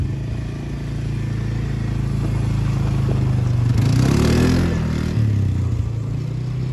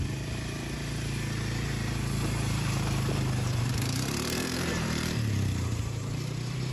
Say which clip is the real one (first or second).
first